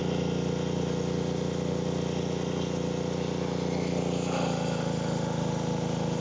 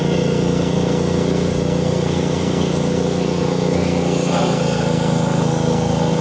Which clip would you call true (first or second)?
first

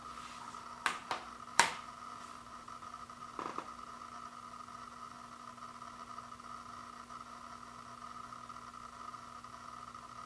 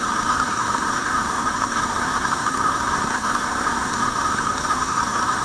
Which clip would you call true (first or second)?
first